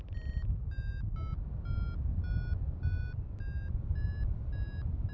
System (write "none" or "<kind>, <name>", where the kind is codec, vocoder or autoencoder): none